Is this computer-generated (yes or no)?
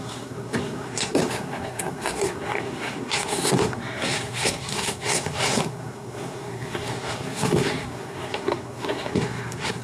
yes